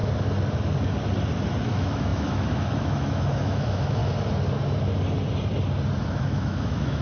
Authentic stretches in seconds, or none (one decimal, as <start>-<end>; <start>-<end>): 0.0-1.7; 4.0-6.1